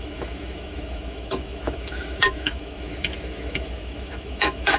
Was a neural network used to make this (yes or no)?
yes